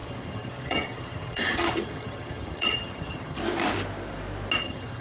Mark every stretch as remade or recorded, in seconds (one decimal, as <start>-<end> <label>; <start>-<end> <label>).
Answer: 0.0-3.4 remade; 3.4-4.6 recorded; 4.6-5.0 remade